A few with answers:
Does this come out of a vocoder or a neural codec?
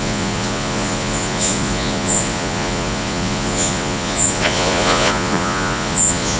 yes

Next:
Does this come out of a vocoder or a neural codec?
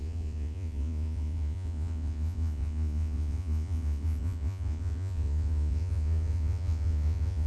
yes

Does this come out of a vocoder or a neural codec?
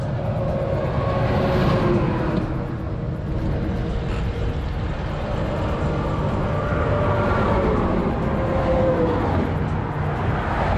no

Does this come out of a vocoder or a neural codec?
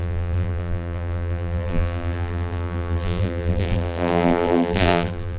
yes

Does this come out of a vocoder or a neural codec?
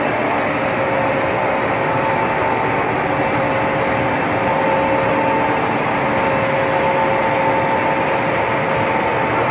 no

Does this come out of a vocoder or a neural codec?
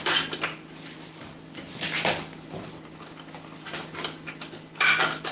no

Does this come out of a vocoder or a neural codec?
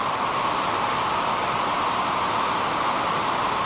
no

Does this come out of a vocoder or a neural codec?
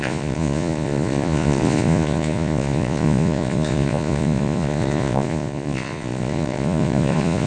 yes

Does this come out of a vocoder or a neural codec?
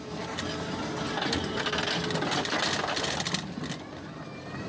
no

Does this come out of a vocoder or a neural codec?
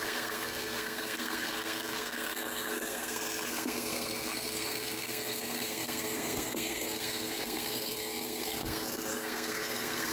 yes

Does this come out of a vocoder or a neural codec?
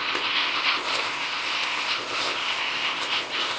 yes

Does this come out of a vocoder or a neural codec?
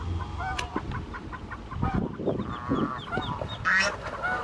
no